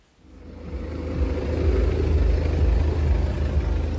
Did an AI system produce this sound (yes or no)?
no